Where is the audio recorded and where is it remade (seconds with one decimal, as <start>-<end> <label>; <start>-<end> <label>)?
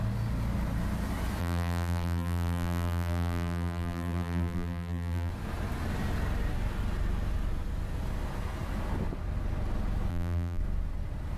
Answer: 0.0-1.4 recorded; 1.4-5.3 remade; 5.3-10.1 recorded; 10.1-10.6 remade; 10.6-11.4 recorded